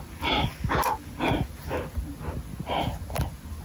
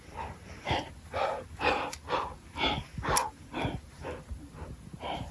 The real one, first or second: first